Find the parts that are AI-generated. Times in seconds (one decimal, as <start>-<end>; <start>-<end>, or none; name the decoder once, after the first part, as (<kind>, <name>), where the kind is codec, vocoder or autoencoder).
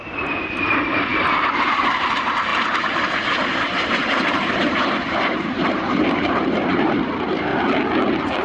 0.0-7.5 (vocoder, BigVGAN v2)